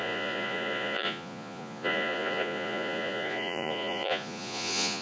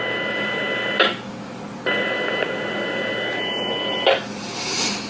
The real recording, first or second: second